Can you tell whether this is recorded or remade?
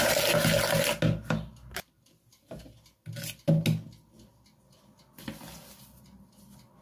recorded